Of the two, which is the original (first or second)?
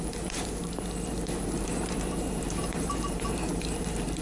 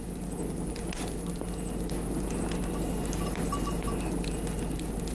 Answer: second